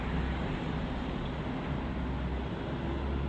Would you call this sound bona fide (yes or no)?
yes